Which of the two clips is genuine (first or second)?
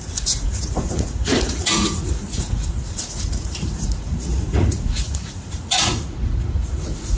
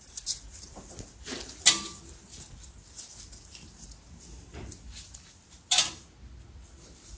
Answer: second